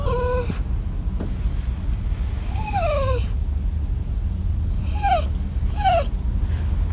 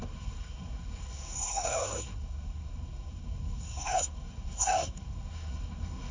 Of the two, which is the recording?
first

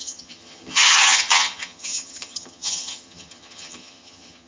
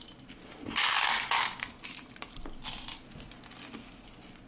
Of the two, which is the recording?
second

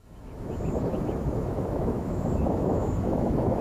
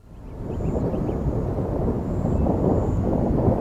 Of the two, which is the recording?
second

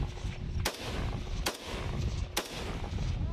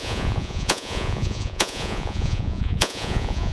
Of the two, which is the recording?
first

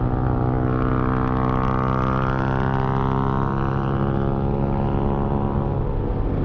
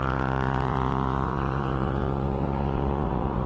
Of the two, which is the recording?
first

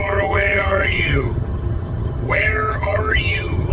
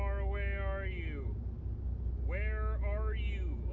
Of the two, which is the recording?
second